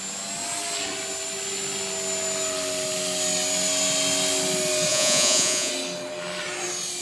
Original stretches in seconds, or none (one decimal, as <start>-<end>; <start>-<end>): 0.0-4.9; 5.7-7.0